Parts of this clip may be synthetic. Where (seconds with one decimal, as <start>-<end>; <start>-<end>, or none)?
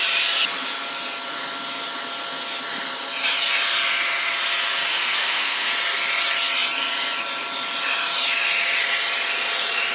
4.9-5.7